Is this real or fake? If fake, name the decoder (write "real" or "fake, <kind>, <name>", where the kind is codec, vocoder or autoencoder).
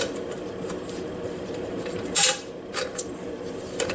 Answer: fake, vocoder, BigVGAN v2